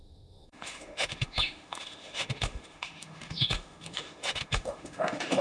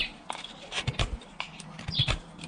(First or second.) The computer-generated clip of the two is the first